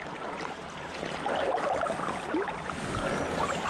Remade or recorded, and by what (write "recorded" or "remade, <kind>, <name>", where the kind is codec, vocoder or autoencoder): recorded